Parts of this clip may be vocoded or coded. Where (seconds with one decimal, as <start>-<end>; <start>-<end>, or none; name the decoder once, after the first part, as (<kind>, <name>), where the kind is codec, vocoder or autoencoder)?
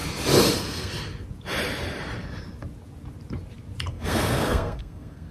0.5-0.9 (codec, SNAC); 3.9-5.3